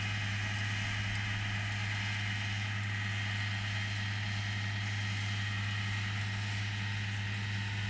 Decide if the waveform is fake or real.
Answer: real